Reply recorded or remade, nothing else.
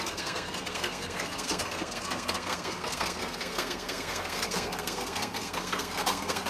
remade